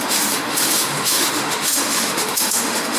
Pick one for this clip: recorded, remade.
remade